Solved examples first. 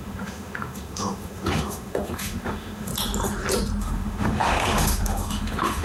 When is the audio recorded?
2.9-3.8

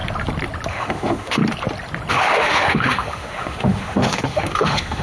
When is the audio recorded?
0.0-0.7; 1.4-2.1

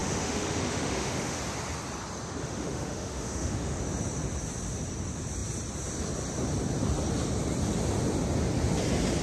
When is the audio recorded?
1.4-2.4; 3.8-9.2